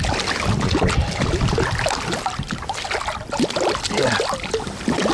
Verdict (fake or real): real